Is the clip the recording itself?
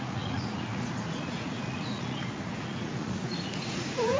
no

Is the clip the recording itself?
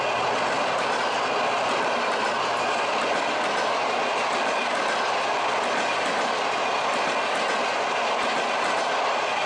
yes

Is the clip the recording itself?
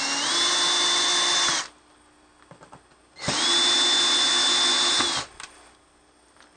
yes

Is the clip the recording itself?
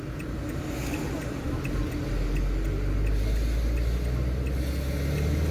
yes